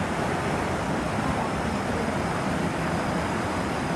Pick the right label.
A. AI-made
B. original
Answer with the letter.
B